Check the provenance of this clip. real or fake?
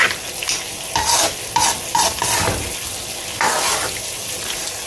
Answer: real